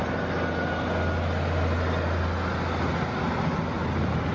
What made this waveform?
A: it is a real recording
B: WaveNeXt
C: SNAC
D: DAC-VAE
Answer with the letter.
A